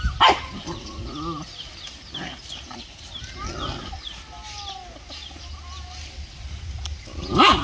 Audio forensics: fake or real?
real